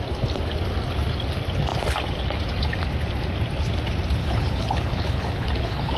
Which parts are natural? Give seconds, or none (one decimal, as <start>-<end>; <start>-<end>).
0.0-4.2